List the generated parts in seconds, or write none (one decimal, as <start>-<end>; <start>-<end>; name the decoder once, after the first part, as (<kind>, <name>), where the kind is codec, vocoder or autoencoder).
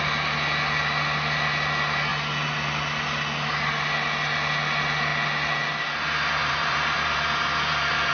6.4-8.1 (vocoder, BigVGAN v2)